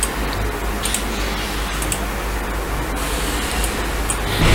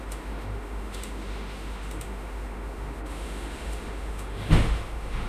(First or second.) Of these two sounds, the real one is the first